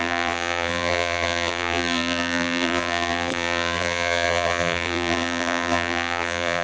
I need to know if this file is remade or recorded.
remade